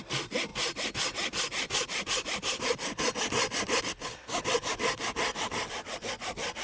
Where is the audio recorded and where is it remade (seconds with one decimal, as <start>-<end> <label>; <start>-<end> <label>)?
0.0-6.6 recorded